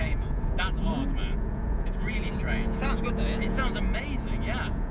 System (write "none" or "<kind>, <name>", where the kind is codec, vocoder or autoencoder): vocoder, Vocos